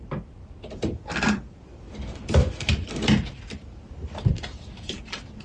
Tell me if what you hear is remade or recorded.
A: remade